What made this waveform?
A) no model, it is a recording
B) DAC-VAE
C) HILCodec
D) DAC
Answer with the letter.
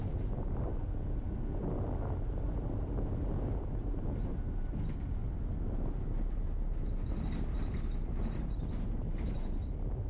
A